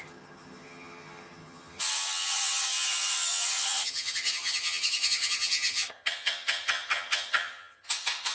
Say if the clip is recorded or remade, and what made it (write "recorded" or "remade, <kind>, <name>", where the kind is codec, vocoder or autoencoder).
remade, vocoder, HiFi-GAN